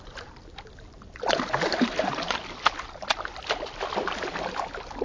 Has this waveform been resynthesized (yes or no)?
no